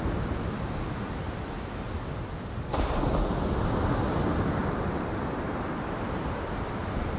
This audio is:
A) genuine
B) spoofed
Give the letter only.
A